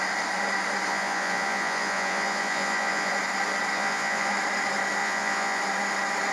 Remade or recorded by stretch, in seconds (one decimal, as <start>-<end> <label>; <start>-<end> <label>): 0.0-0.9 recorded; 0.9-3.1 remade; 3.1-3.7 recorded; 3.7-4.3 remade; 4.3-5.0 recorded; 5.0-5.6 remade; 5.6-6.3 recorded